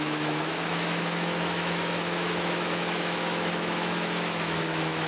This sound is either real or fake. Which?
fake